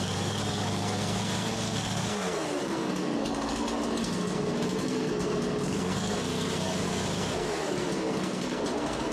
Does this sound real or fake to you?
fake